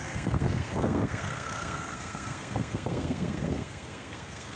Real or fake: fake